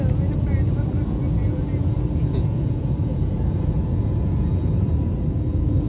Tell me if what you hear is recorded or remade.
remade